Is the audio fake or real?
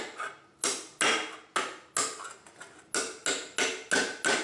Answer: real